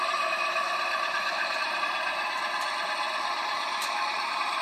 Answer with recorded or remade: remade